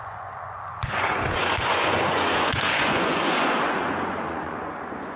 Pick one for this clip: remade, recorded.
remade